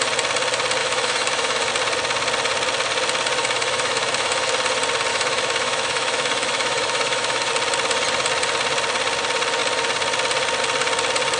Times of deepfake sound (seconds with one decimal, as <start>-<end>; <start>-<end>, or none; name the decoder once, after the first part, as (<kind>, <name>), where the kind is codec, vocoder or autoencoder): 0.8-1.7 (autoencoder, DAC-VAE); 3.4-4.5; 5.1-7.5